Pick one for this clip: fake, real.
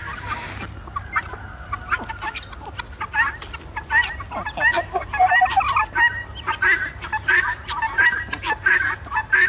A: real